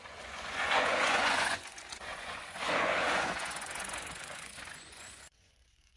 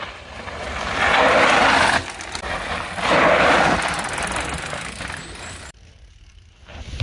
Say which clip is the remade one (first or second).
first